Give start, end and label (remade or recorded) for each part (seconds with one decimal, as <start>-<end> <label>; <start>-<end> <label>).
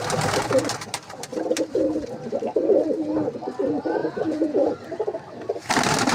0.0-4.0 recorded; 4.0-4.7 remade; 4.7-6.1 recorded